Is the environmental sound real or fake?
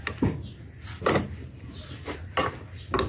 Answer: real